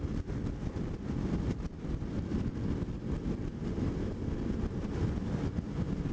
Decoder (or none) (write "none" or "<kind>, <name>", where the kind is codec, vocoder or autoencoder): none